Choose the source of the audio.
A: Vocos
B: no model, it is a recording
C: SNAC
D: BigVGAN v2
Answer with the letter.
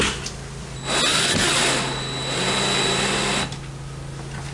B